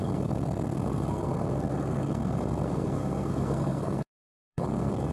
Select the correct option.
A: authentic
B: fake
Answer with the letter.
B